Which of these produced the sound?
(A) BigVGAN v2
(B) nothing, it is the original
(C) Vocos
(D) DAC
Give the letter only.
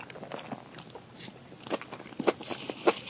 B